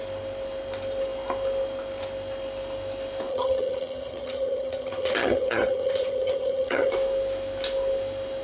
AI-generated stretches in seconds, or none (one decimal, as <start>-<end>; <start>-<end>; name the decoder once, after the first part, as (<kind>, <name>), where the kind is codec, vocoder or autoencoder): 3.3-6.9 (vocoder, HiFi-GAN)